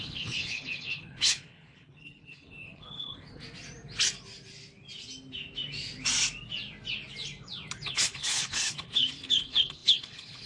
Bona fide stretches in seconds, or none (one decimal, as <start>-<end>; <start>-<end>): 3.4-7.9